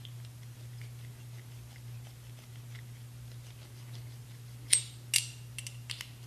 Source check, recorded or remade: recorded